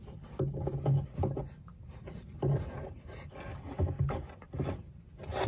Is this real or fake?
real